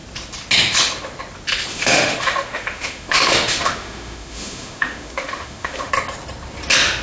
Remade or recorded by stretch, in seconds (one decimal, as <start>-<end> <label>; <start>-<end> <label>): 0.0-1.7 recorded; 1.7-5.9 remade; 5.9-7.0 recorded